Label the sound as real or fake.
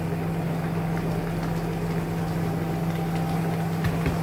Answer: real